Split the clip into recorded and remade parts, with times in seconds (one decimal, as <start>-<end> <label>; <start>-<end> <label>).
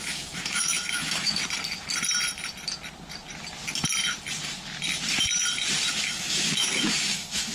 0.0-1.4 remade; 1.4-5.9 recorded; 5.9-7.5 remade